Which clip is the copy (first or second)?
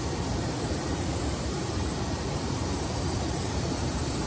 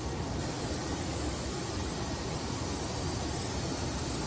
first